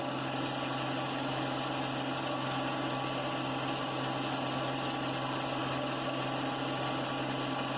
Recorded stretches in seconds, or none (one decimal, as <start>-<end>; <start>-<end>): 0.0-7.8